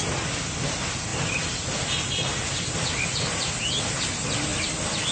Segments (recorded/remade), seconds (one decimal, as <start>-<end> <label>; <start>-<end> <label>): 0.0-4.5 recorded; 4.5-5.1 remade